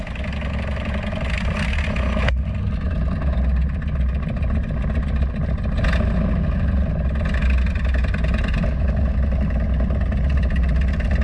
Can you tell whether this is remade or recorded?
recorded